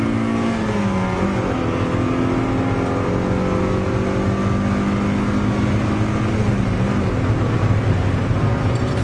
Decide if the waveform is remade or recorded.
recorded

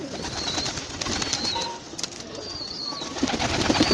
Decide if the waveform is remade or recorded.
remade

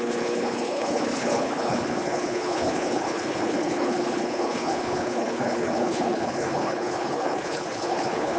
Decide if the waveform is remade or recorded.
remade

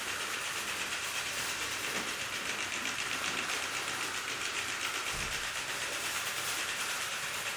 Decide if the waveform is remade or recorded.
remade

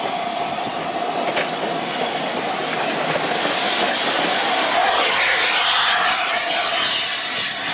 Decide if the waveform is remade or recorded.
recorded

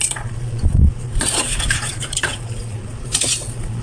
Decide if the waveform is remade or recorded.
remade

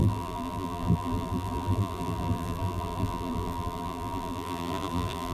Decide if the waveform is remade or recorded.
remade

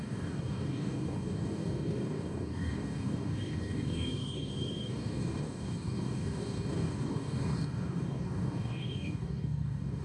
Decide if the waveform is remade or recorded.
remade